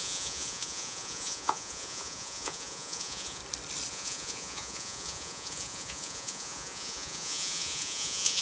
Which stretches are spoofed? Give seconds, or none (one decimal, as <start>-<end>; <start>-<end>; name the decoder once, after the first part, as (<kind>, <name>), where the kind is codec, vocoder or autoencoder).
0.0-3.4 (vocoder, Vocos); 3.9-8.4